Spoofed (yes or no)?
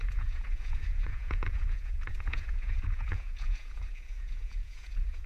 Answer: yes